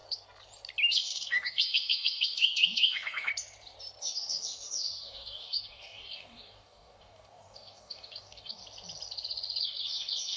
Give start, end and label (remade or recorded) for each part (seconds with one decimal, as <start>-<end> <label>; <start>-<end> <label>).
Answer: 0.0-0.9 recorded; 0.9-3.3 remade; 3.3-4.0 recorded; 4.0-8.6 remade; 8.6-9.6 recorded; 9.6-10.4 remade